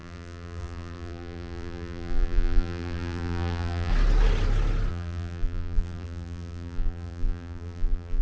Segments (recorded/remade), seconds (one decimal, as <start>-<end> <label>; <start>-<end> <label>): 0.0-3.9 remade; 3.9-4.9 recorded; 4.9-8.2 remade